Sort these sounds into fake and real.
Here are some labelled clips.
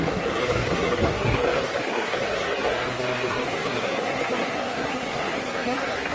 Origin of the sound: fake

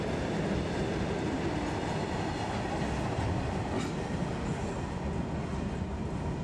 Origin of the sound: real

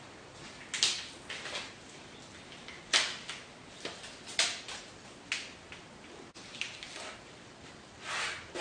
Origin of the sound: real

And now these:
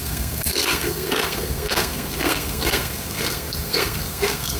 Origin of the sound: fake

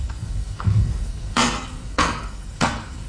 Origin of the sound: fake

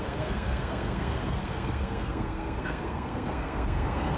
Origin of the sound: fake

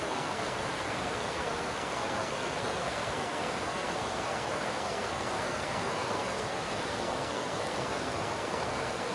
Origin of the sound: fake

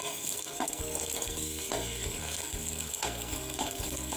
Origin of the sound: fake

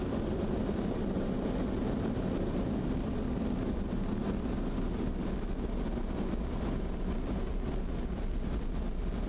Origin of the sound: real